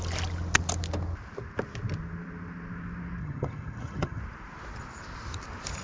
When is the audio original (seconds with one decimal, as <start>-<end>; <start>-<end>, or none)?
0.0-3.2; 4.2-5.8